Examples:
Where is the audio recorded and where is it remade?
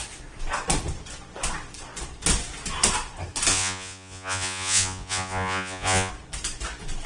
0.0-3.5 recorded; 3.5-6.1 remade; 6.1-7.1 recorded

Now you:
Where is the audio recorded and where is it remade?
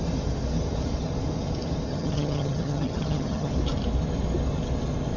0.0-1.9 recorded; 1.9-3.5 remade; 3.5-5.2 recorded